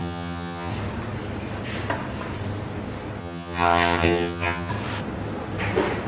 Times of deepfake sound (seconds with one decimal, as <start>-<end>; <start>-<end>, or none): 0.0-0.7; 3.2-4.7